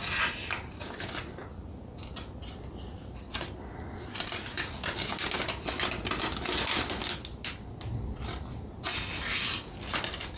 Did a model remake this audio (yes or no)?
no